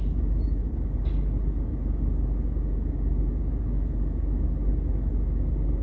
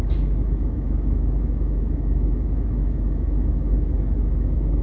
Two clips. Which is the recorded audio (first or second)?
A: first